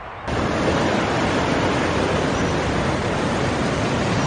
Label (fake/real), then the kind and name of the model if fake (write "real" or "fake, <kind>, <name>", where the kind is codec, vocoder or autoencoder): real